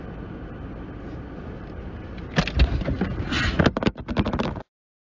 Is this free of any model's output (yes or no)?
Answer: yes